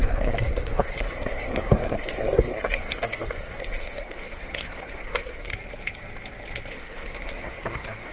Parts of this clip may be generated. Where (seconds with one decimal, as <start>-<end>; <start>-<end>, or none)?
0.0-5.5; 6.7-8.1